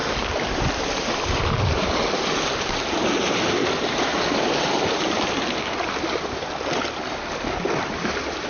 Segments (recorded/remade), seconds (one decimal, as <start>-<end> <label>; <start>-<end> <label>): 0.0-8.5 recorded